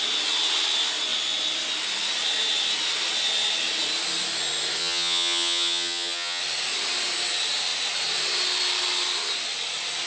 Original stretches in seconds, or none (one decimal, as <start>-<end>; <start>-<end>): 0.0-4.8; 6.4-10.1